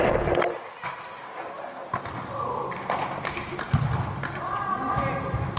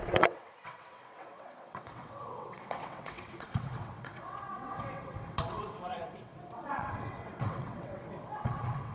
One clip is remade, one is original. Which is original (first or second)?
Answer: first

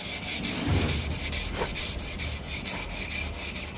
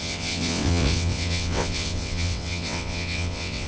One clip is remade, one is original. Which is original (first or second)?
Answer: first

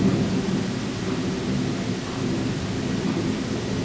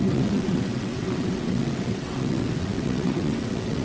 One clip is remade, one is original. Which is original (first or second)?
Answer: first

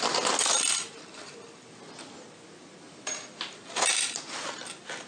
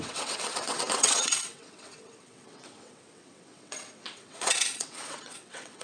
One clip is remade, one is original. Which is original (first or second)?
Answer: first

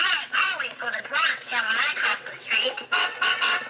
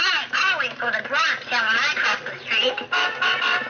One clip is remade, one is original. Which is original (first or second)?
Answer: second